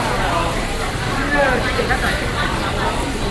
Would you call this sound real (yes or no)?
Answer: no